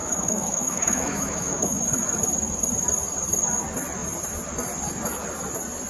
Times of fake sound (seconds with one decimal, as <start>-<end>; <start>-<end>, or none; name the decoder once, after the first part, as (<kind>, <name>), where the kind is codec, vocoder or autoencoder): 0.0-1.8 (autoencoder, DAC-VAE)